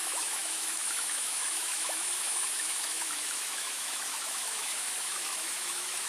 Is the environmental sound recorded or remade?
remade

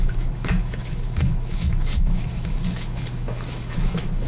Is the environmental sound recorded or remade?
remade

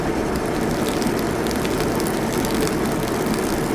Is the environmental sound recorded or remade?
recorded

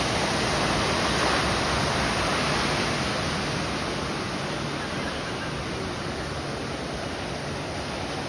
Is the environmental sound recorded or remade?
recorded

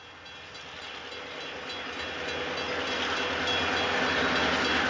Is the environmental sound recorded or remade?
recorded